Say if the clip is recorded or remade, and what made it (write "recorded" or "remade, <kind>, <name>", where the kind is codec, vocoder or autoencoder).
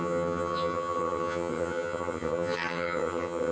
remade, vocoder, HiFi-GAN